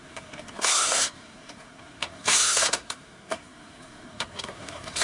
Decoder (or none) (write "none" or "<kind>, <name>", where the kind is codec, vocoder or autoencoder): codec, SNAC